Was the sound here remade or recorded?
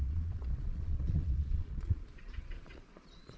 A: remade